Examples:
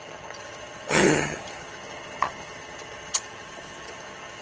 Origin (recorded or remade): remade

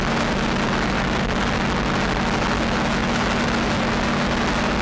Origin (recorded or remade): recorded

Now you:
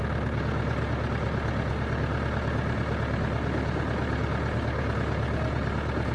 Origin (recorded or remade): recorded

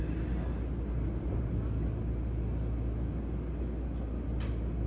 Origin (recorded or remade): recorded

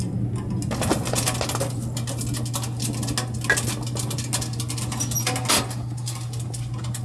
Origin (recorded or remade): recorded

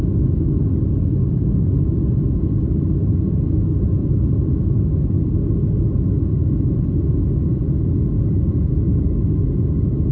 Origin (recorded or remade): recorded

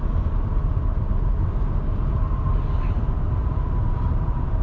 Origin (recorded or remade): recorded